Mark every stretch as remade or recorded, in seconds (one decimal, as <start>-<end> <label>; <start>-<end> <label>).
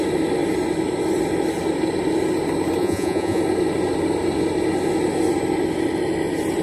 0.0-2.8 recorded; 2.8-3.4 remade; 3.4-6.6 recorded